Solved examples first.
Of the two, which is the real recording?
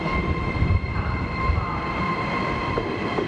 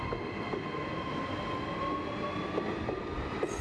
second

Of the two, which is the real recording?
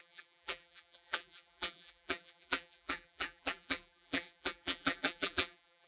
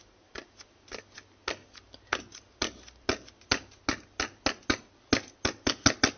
second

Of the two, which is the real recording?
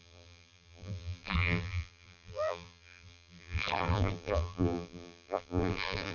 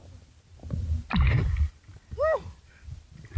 second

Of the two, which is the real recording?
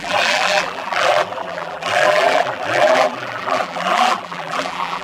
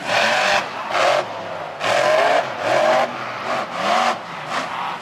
second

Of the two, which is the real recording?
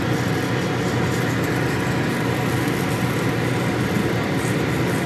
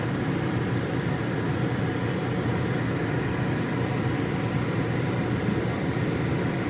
first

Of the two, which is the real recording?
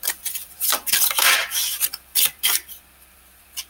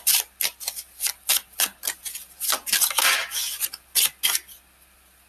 second